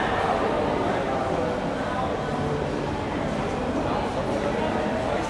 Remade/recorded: recorded